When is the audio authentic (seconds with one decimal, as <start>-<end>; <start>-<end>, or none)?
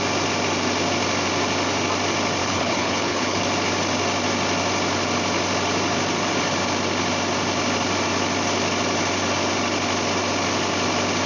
0.0-2.4; 3.4-11.3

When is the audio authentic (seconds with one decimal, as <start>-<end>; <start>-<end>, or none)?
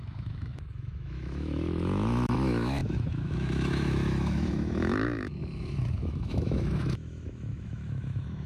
none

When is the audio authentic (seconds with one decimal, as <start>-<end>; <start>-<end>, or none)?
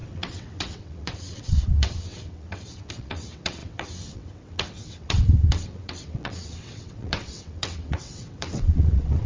none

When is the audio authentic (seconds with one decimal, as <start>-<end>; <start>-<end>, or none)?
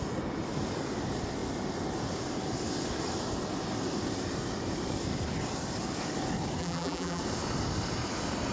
0.0-6.6; 7.2-8.5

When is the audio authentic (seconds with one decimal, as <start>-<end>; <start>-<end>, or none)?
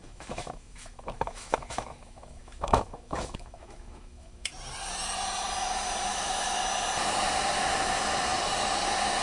4.5-6.1; 6.6-9.2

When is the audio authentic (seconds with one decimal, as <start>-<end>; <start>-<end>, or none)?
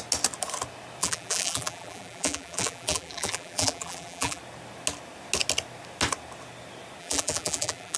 0.0-1.0; 4.4-7.0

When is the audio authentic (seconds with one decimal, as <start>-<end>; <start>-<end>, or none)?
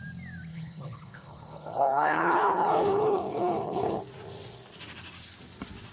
0.0-0.5; 4.0-5.9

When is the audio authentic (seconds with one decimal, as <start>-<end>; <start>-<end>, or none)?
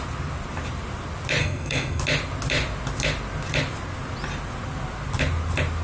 0.0-1.4; 2.0-5.8